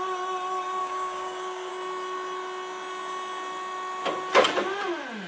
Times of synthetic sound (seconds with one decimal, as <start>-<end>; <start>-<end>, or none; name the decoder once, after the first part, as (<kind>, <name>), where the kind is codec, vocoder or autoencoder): 0.8-1.7 (codec, DAC)